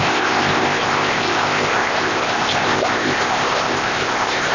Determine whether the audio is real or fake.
fake